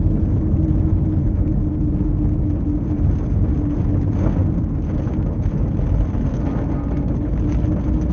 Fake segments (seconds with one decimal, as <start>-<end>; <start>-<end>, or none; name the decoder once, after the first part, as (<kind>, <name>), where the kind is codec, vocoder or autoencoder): 1.2-2.2 (codec, DAC)